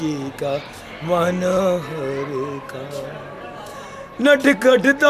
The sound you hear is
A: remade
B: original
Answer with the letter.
B